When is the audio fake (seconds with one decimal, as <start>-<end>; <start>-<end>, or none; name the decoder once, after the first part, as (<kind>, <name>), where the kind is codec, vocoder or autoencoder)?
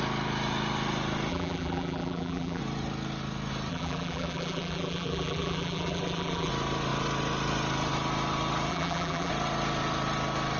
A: 1.3-2.6 (vocoder, BigVGAN v2); 3.7-6.5; 8.7-9.3